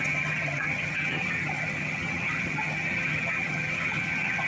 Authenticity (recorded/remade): remade